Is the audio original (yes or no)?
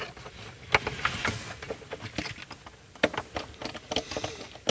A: yes